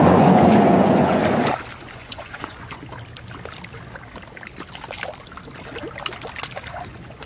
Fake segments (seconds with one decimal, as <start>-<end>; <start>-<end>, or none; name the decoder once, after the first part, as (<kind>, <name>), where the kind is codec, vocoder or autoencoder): 0.0-1.2 (vocoder, Vocos); 1.9-2.8; 6.7-7.3